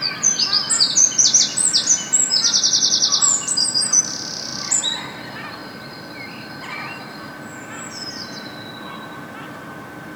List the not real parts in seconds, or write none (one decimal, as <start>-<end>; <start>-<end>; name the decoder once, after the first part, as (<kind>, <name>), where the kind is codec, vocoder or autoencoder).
none